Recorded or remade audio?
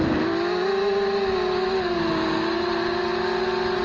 recorded